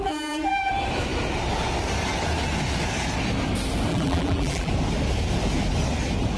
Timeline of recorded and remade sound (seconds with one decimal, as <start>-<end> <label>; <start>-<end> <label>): 0.0-0.7 remade; 0.7-3.9 recorded; 3.9-4.7 remade; 4.7-6.4 recorded